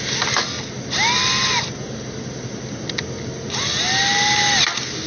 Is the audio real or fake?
real